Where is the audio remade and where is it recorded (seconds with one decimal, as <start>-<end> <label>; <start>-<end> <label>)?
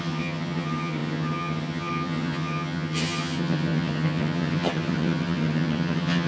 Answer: 0.0-6.3 remade